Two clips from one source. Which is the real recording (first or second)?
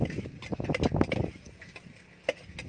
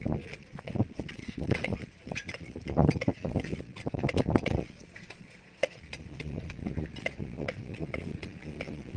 first